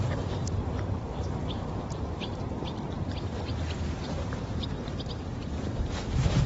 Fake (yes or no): yes